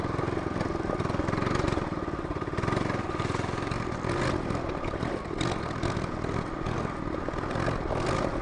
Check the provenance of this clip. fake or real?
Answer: real